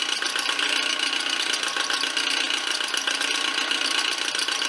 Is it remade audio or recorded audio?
recorded